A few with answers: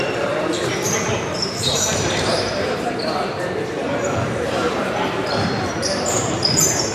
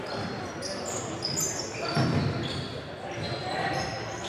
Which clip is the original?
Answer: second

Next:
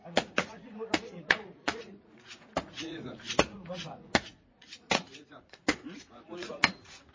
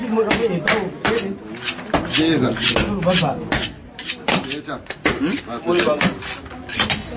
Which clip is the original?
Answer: second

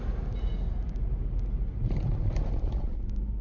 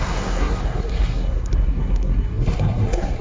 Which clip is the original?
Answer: first